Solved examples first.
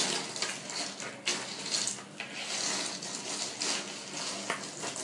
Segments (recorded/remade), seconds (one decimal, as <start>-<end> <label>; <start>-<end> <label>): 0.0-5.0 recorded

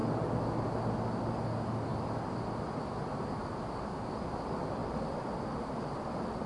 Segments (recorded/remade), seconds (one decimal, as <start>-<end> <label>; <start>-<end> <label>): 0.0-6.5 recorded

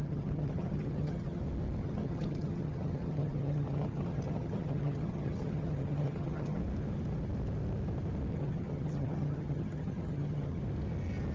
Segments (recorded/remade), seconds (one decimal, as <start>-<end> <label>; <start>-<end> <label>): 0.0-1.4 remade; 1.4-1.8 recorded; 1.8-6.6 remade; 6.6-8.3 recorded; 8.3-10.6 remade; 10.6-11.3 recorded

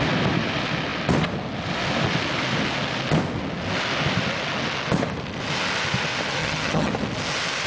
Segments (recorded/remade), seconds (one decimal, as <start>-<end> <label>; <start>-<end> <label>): 0.0-6.4 recorded; 6.4-6.9 remade; 6.9-7.7 recorded

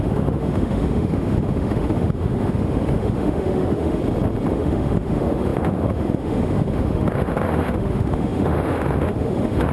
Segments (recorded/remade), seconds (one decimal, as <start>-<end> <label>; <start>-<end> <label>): 0.0-4.0 remade; 4.0-4.5 recorded; 4.5-9.7 remade

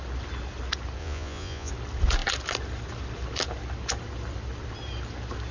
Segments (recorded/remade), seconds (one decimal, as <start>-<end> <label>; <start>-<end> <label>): 0.0-1.0 recorded; 1.0-1.7 remade; 1.7-5.5 recorded

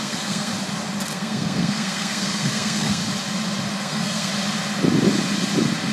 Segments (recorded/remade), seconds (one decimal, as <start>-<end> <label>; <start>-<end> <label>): 0.0-0.5 remade; 0.5-1.1 recorded; 1.1-3.0 remade; 3.0-3.8 recorded; 3.8-4.3 remade; 4.3-5.9 recorded